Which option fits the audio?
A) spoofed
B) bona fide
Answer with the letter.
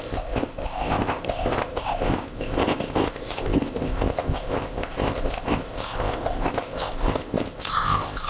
A